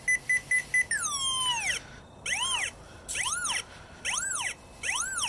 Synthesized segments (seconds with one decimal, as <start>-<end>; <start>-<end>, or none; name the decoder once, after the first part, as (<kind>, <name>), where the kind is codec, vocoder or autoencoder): none